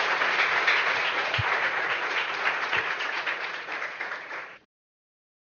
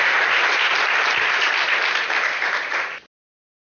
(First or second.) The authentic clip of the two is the second